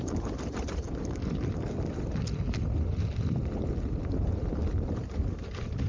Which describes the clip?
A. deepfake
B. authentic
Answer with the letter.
A